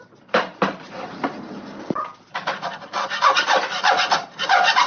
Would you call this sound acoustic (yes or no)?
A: yes